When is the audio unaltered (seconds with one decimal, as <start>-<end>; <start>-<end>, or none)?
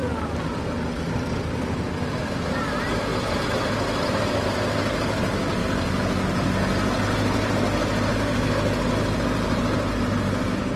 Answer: 0.0-10.8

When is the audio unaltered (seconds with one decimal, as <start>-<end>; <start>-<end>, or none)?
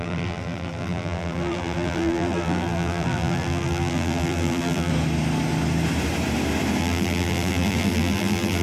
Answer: 4.9-6.8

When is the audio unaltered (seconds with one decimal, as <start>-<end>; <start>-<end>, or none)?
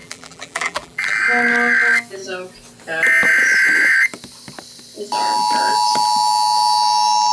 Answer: 1.2-7.3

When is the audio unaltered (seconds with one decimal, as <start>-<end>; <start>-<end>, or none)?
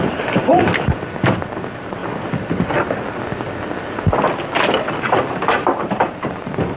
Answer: 0.5-1.5; 2.0-5.8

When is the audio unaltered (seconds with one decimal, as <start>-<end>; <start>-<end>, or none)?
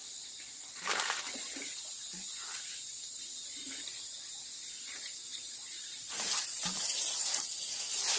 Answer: 0.0-4.9; 6.4-8.2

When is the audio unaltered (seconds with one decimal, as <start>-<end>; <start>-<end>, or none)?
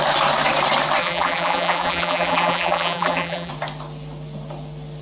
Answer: 0.0-1.0; 3.5-5.0